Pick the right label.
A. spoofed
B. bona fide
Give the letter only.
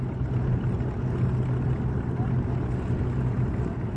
B